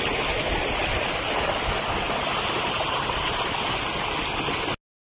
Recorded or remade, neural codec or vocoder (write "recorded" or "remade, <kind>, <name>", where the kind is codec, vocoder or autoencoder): recorded